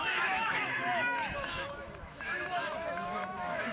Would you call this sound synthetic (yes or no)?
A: yes